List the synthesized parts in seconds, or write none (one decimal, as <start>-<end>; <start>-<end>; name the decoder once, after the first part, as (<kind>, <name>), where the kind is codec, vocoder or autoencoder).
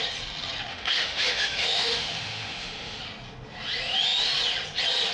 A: 0.7-3.0 (autoencoder, DAC-VAE)